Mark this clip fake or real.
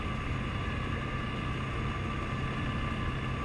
real